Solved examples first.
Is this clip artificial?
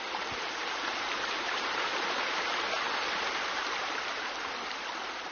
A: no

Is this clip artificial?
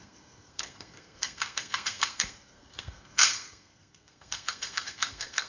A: yes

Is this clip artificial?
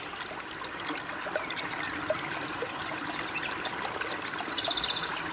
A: no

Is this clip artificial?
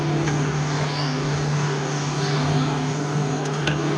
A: yes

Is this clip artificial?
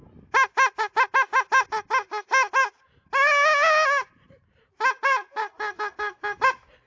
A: no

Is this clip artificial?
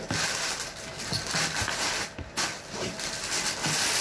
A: no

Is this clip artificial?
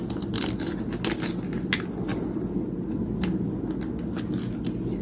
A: no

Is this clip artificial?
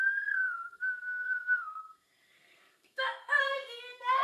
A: yes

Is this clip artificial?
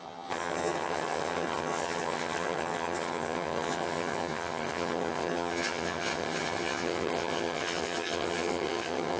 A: yes